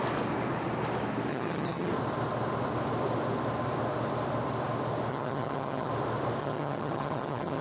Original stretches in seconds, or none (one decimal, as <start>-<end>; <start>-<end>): 0.0-1.3; 1.9-5.1; 5.9-6.4